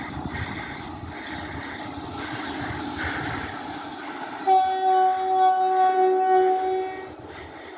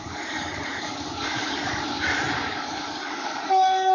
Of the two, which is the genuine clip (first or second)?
first